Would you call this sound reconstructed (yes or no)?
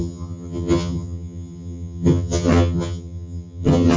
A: yes